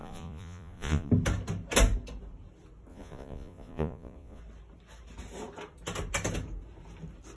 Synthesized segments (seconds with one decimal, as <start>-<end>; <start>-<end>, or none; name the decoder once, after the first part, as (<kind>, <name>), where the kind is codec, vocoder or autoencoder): 0.0-1.1 (vocoder, Vocos); 2.9-4.4